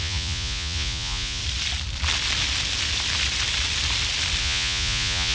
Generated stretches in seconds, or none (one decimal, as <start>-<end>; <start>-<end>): 0.0-1.4; 4.4-5.3